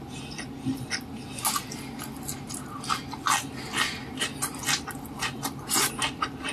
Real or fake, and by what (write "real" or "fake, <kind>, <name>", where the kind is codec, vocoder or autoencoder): real